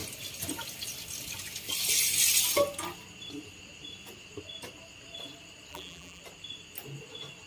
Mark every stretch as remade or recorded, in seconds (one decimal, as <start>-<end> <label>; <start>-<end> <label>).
0.0-5.7 recorded; 5.7-6.2 remade; 6.2-7.5 recorded